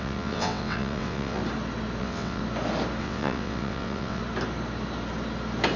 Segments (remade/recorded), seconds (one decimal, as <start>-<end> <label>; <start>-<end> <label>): 0.0-1.4 remade; 1.4-2.0 recorded; 2.0-2.4 remade; 2.4-3.0 recorded; 3.0-4.2 remade; 4.2-5.8 recorded